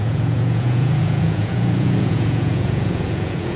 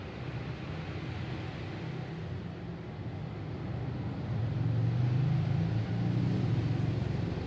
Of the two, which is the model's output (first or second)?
first